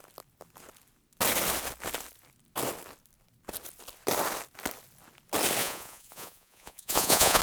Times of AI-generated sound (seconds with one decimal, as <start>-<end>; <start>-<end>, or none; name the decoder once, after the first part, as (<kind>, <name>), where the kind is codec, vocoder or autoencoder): 5.6-7.4 (vocoder, Vocos)

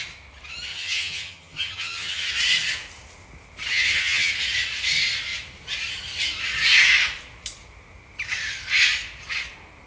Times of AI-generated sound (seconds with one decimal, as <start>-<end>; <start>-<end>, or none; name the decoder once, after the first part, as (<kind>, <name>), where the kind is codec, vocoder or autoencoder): 0.7-2.3 (vocoder, HiFi-GAN); 3.7-4.3